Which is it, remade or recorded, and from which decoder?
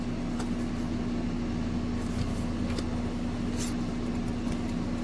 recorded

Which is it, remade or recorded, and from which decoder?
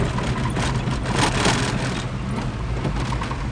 recorded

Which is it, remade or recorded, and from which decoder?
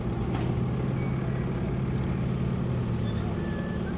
recorded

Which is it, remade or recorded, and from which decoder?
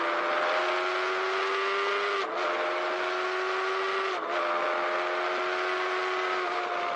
recorded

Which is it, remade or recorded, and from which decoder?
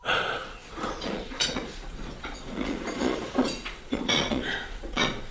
remade, vocoder, Vocos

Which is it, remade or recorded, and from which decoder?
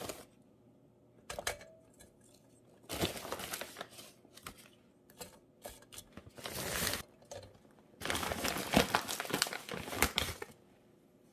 recorded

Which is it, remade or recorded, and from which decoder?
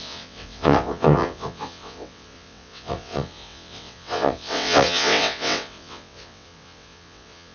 remade, vocoder, WaveNeXt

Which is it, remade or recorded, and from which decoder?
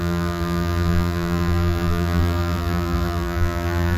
remade, vocoder, BigVGAN v2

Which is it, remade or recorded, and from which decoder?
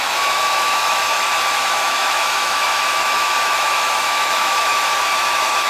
remade, autoencoder, DAC-VAE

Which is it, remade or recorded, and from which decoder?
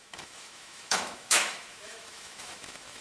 remade, autoencoder, DAC-VAE